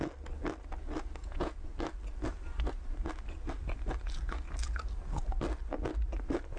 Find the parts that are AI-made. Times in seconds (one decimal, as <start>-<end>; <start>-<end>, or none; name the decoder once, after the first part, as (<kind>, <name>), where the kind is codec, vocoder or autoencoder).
1.2-1.7 (vocoder, Vocos)